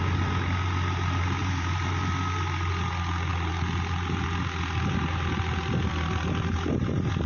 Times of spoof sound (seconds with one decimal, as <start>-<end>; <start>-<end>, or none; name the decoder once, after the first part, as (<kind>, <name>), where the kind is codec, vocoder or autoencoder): 1.4-1.9 (vocoder, BigVGAN v2)